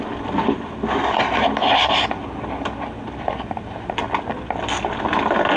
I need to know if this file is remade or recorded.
recorded